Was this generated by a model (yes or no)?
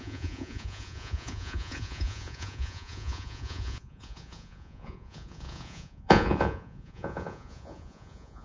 yes